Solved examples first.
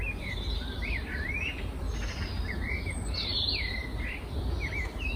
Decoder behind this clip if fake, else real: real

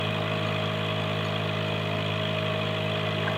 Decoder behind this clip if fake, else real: real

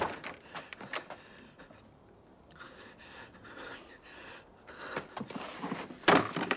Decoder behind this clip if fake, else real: real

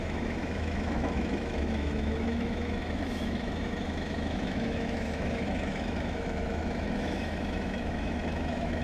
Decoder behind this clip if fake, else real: fake, autoencoder, DAC-VAE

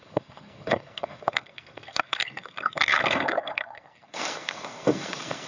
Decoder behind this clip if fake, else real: fake, codec, SNAC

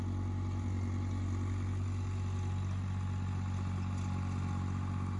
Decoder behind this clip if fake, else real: real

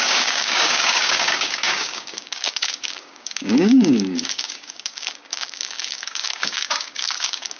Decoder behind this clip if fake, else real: fake, codec, DAC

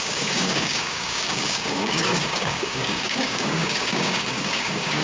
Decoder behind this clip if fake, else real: fake, codec, DAC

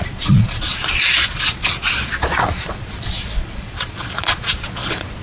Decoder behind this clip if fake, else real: fake, vocoder, Vocos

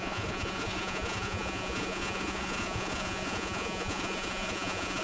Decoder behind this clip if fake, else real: fake, vocoder, Vocos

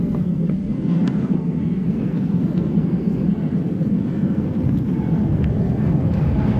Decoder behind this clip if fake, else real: fake, codec, SNAC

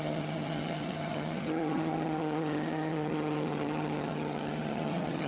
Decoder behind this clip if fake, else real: fake, vocoder, HiFi-GAN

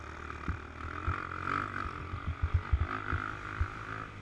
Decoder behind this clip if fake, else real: real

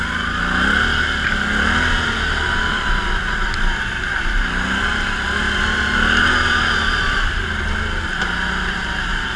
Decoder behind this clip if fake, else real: real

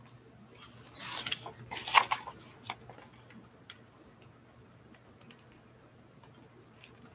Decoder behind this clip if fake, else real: real